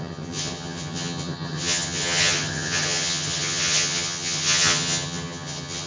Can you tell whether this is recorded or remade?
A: remade